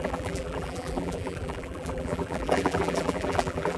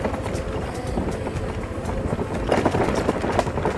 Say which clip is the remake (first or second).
first